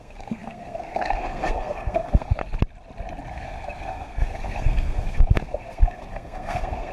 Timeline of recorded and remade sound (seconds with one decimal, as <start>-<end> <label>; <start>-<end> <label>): 0.0-2.4 remade; 2.4-3.3 recorded; 3.3-6.9 remade